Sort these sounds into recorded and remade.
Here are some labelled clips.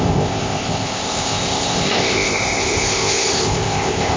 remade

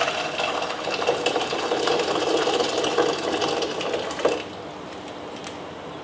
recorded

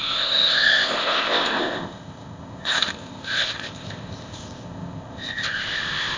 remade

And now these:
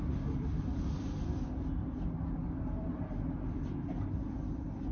recorded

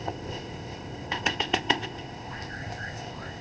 remade